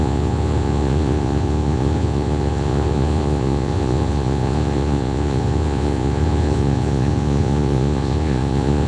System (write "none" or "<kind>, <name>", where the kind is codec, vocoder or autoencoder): vocoder, Vocos